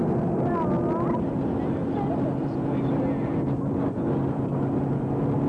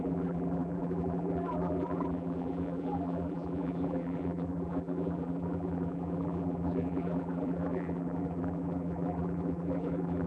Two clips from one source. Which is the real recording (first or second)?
first